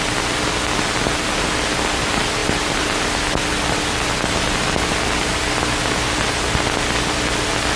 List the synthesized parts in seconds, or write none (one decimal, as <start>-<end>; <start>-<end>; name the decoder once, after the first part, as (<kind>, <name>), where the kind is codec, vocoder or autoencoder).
none